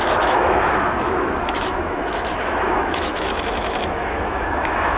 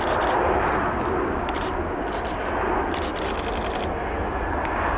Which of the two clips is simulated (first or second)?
first